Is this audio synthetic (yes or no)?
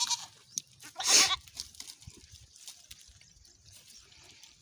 no